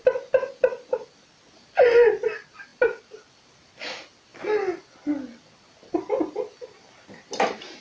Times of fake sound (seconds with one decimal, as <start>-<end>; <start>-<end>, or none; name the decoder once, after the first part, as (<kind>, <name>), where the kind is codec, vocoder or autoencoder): none